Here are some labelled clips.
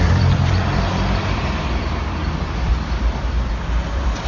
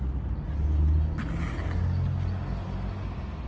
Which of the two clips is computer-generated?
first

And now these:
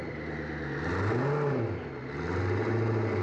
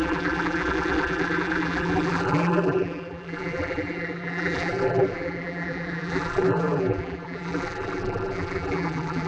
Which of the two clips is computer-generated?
second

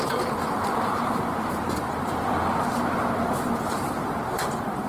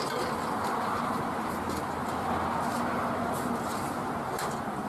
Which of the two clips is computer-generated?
first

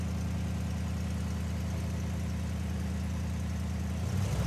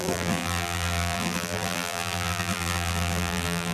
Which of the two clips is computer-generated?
second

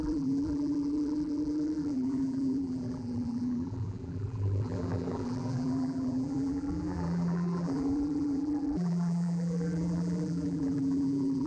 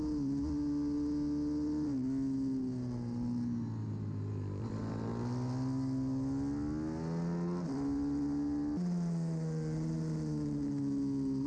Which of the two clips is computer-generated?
first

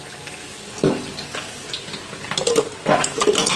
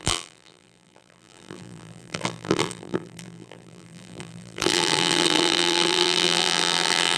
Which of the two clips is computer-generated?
second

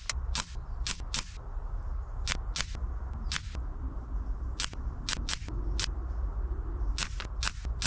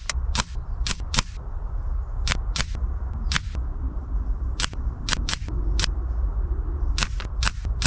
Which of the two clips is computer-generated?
second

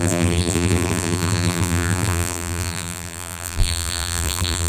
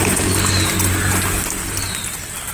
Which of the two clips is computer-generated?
first